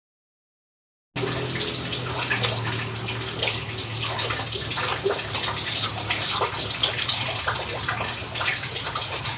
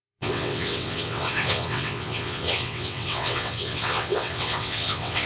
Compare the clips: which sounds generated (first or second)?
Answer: second